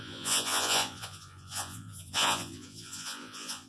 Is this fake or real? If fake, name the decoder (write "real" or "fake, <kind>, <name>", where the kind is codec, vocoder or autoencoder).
fake, vocoder, Vocos